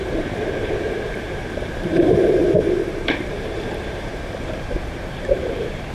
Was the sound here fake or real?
fake